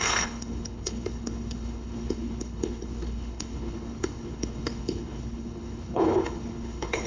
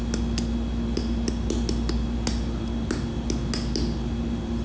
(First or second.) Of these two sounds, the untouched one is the second